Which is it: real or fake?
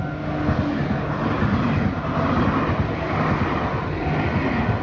real